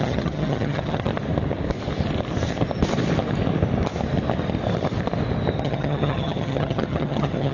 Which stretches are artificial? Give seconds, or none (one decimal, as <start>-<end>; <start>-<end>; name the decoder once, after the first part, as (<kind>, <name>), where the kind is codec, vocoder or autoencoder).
0.0-1.1 (vocoder, HiFi-GAN); 5.6-7.5